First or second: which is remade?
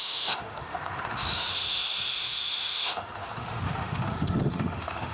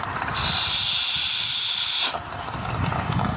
first